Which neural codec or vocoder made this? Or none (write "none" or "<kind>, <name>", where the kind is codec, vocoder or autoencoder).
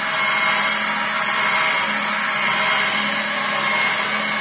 none